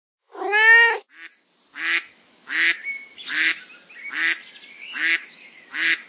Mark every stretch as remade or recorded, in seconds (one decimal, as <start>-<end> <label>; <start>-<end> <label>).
0.0-1.0 remade; 1.0-2.1 recorded; 2.1-3.5 remade; 3.5-4.7 recorded; 4.7-6.1 remade